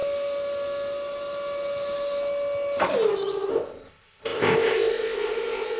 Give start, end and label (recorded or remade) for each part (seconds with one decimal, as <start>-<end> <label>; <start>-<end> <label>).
0.0-3.5 recorded; 3.5-5.8 remade